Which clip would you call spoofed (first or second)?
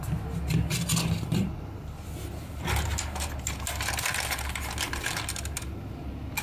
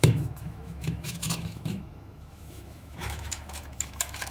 second